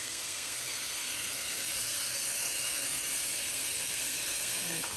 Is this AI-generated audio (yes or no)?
yes